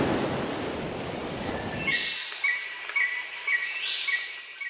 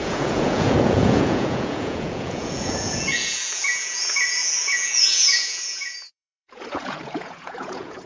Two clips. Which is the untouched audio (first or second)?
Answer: first